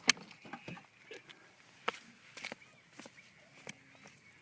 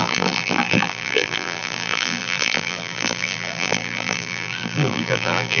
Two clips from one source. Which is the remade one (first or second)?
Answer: second